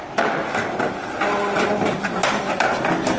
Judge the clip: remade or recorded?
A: recorded